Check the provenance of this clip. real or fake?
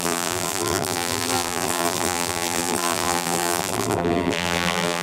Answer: fake